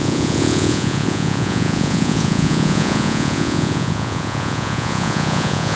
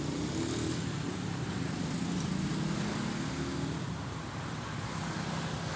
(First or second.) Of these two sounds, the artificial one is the first